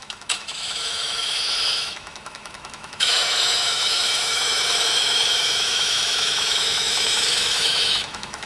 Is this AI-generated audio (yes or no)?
yes